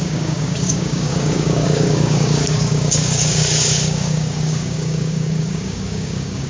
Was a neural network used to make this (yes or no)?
yes